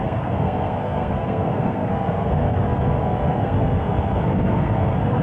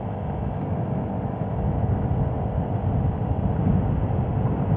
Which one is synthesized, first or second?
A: first